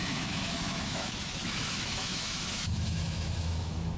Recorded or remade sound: remade